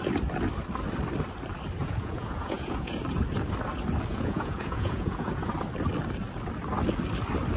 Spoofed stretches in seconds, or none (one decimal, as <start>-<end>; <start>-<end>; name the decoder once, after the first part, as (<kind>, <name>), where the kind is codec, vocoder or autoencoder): 1.8-3.0 (vocoder, Vocos); 4.1-5.5